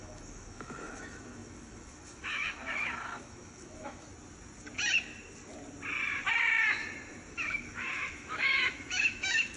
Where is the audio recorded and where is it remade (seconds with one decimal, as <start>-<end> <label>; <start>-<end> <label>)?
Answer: 0.0-4.1 remade; 4.1-7.3 recorded; 7.3-9.6 remade